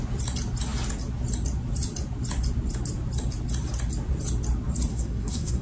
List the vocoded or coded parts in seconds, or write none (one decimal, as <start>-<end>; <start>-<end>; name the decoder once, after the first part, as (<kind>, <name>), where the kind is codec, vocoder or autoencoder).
4.9-5.6 (codec, SNAC)